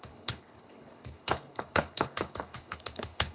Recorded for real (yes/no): no